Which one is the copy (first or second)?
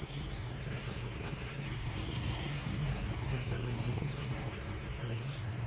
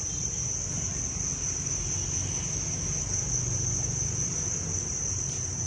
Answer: first